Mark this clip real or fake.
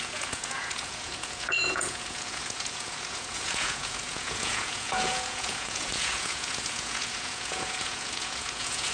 fake